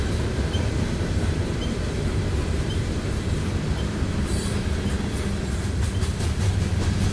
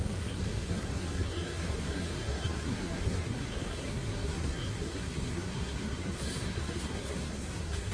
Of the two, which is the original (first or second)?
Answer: first